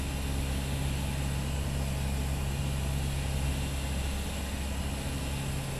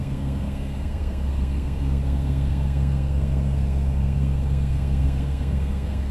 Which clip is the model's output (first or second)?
second